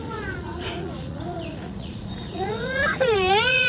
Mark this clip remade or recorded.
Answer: remade